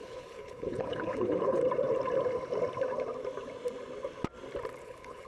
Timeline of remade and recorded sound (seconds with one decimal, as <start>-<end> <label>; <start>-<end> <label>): 0.0-1.6 remade; 1.6-4.8 recorded; 4.8-5.3 remade